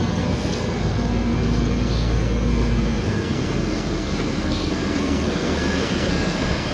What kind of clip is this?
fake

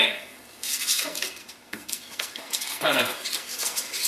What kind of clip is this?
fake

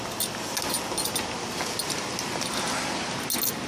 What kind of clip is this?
real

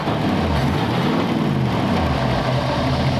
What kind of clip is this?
real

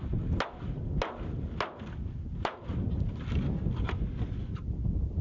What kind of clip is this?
real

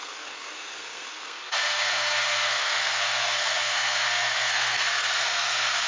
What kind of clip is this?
fake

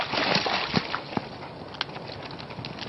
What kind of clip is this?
real